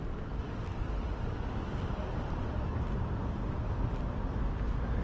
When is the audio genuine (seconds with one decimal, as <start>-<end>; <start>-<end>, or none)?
0.0-0.7; 3.7-5.0